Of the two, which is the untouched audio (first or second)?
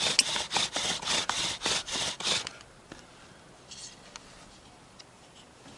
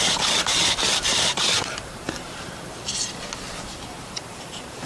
first